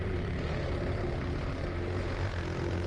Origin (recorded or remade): recorded